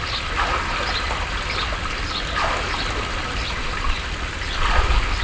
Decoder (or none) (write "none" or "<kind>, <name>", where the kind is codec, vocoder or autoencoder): none